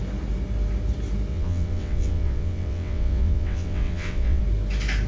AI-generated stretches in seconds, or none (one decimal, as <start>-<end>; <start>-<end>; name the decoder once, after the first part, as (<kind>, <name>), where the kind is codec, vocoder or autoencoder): 1.3-4.4 (vocoder, WaveNeXt)